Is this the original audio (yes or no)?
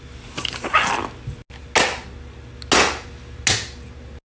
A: yes